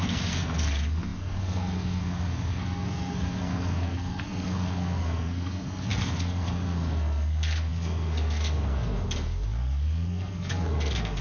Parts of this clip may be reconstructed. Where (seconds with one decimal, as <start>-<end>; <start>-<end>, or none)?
0.0-11.2